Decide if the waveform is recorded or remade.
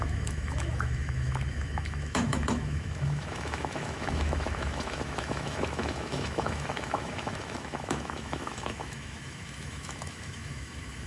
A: remade